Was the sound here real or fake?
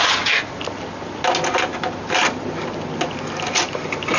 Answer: real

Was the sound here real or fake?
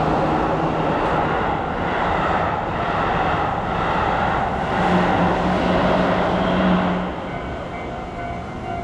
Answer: real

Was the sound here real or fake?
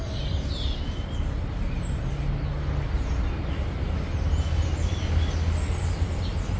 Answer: real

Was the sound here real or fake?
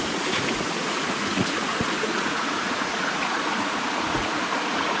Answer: fake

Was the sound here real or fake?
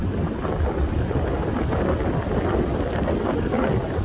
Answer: real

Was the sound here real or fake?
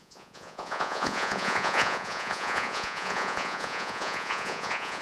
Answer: fake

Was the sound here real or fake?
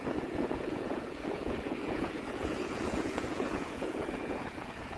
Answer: fake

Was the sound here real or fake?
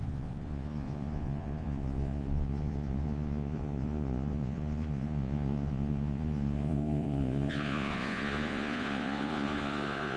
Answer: fake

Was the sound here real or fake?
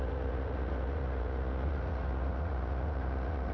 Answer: fake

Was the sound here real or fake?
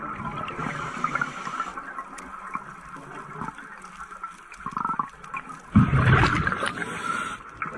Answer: real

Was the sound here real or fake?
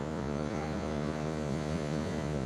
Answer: fake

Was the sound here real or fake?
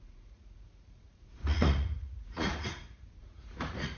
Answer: fake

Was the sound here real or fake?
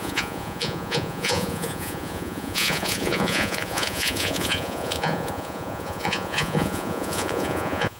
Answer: fake